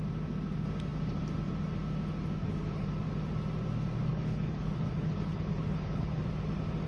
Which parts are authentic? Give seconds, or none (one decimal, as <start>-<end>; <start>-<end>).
0.0-2.4; 2.9-4.1; 6.2-6.9

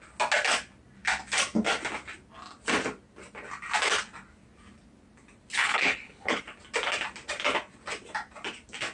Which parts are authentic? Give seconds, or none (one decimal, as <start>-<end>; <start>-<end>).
0.0-5.6; 6.4-8.9